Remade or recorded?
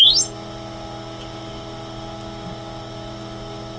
recorded